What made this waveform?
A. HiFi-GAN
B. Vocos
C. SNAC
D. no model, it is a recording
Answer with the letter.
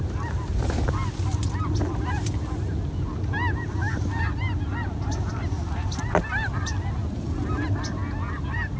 D